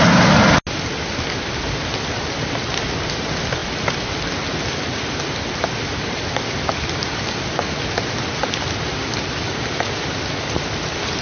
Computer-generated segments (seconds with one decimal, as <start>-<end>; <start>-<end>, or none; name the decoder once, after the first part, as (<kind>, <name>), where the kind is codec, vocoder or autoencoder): none